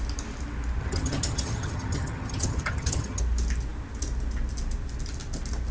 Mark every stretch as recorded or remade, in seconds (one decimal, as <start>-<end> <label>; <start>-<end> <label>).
0.0-0.8 recorded; 0.8-3.2 remade; 3.2-5.7 recorded